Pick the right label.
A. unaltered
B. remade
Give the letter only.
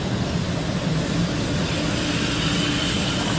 A